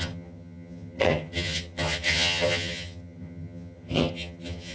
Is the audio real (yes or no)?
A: no